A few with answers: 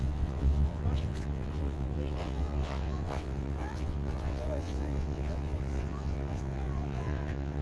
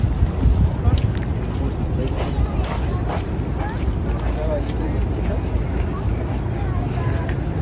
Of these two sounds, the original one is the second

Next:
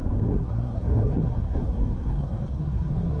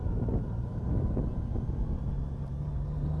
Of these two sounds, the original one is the second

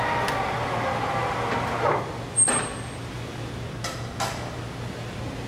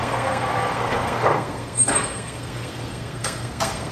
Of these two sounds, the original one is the first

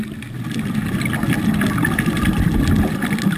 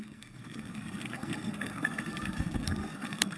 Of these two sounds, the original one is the first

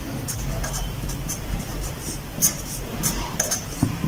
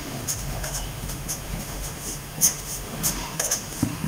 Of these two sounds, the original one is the first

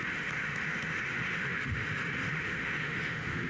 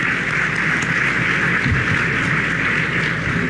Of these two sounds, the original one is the second